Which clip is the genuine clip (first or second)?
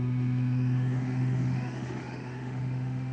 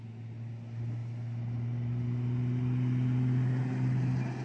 second